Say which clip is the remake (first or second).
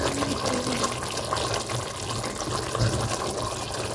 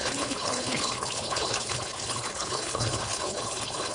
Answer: second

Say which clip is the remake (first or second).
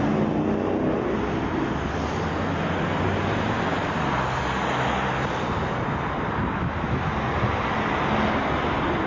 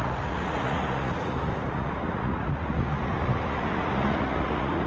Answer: second